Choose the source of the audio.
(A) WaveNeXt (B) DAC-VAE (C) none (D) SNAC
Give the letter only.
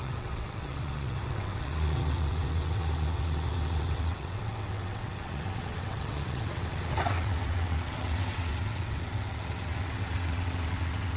A